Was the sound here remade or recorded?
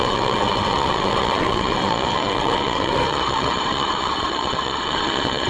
remade